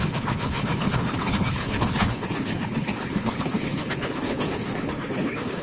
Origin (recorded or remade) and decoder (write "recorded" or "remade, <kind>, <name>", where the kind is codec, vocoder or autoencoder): remade, codec, HILCodec